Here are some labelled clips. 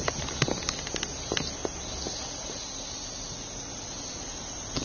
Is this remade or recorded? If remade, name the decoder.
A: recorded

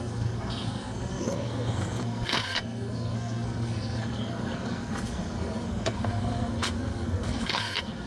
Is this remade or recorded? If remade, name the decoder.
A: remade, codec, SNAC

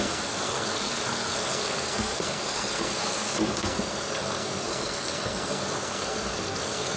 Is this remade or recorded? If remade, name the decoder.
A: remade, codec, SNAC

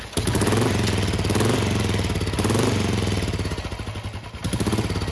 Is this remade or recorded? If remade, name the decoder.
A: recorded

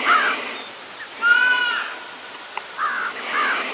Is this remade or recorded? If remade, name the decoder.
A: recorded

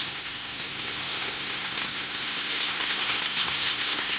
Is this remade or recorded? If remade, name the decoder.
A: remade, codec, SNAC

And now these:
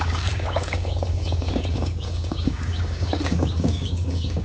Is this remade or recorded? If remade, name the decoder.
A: remade, codec, DAC